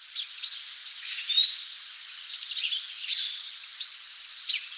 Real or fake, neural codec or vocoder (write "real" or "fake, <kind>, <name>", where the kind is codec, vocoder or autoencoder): fake, vocoder, BigVGAN v2